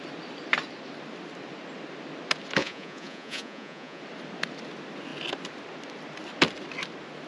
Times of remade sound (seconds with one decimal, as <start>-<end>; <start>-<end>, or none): 2.6-4.0